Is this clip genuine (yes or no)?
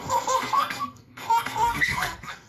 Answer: no